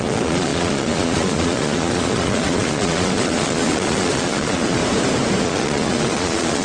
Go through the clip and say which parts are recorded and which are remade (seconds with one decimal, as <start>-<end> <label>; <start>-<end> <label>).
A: 0.0-4.8 remade; 4.8-5.4 recorded; 5.4-6.6 remade